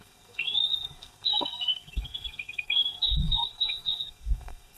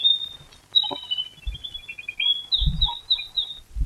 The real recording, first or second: second